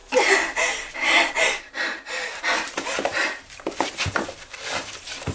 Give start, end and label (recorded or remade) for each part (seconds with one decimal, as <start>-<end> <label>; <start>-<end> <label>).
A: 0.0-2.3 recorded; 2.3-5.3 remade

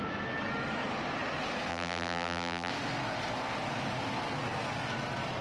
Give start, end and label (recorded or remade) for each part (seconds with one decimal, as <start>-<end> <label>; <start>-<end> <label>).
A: 0.0-1.7 recorded; 1.7-2.7 remade; 2.7-5.4 recorded

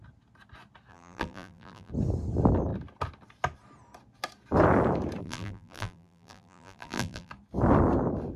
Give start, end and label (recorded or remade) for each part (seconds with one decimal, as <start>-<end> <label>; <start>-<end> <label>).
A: 0.0-0.9 recorded; 0.9-1.9 remade; 1.9-5.2 recorded; 5.2-7.3 remade; 7.3-8.4 recorded